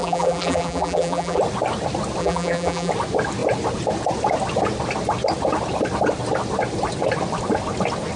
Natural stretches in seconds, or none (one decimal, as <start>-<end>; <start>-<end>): 1.4-2.2; 2.9-8.2